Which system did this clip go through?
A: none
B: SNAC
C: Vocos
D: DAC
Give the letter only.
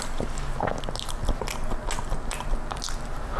A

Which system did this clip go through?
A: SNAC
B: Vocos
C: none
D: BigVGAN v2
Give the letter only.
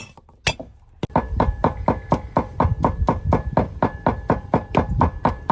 C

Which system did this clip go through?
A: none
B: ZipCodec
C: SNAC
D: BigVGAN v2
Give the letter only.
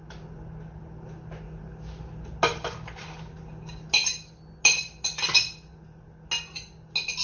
A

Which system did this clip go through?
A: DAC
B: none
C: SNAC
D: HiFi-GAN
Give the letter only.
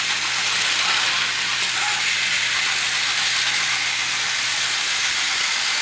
B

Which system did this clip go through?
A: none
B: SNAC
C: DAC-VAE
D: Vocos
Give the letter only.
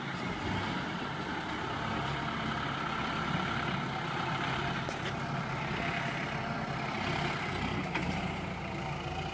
A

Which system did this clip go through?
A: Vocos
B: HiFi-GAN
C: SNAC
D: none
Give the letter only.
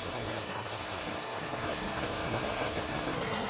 C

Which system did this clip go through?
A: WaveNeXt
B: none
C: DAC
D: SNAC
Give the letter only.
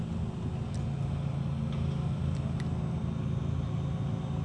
B